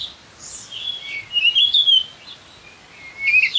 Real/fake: real